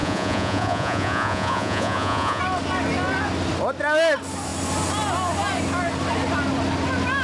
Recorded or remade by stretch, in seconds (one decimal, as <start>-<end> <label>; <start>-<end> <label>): 0.0-2.4 remade; 2.4-7.2 recorded